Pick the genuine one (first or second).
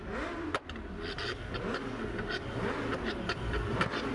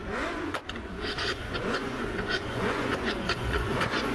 first